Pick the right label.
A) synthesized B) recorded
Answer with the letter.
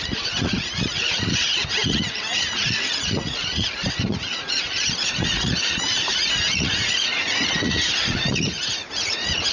A